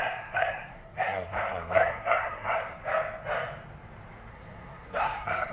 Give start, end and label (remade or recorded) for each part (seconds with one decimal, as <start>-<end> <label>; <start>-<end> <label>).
0.0-2.8 remade; 2.8-4.3 recorded; 4.3-5.5 remade